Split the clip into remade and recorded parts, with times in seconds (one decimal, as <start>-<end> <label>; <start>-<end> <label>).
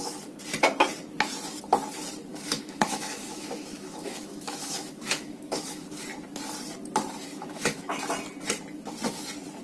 0.0-2.3 recorded; 2.3-6.0 remade; 6.0-7.3 recorded; 7.3-8.0 remade; 8.0-9.6 recorded